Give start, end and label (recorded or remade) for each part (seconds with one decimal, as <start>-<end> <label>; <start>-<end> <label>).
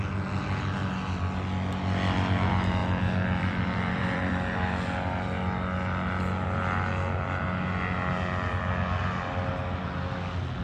0.0-2.8 recorded; 2.8-4.3 remade; 4.3-9.0 recorded; 9.0-9.5 remade; 9.5-10.6 recorded